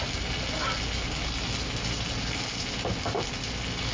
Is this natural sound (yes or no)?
yes